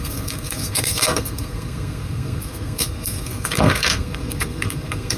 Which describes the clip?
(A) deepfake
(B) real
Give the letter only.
A